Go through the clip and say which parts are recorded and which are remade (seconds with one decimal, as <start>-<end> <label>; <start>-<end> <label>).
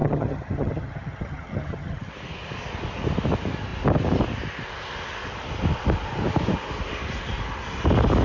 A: 0.0-2.1 remade; 2.1-8.2 recorded